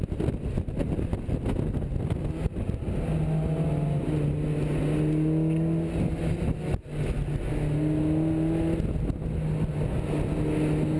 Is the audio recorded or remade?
recorded